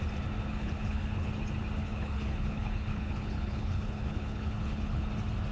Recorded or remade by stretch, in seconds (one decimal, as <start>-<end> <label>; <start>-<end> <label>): 0.0-0.6 recorded; 0.6-1.3 remade; 1.3-1.8 recorded; 1.8-5.1 remade; 5.1-5.5 recorded